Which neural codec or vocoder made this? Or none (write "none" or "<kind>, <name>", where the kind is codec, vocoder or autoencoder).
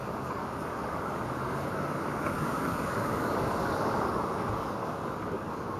codec, DAC